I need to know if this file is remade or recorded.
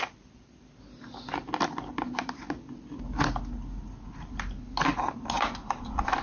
recorded